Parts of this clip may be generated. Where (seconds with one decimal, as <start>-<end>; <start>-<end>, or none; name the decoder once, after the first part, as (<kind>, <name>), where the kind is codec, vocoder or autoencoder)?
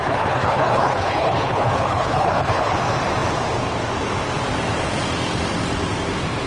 0.0-2.8 (codec, HILCodec)